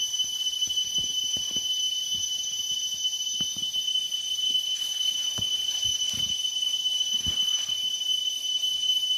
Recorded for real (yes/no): yes